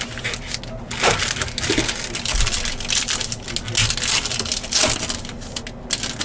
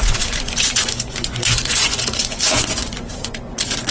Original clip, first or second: first